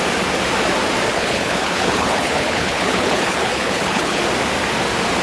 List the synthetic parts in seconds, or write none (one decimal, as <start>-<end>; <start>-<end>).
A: 1.1-4.2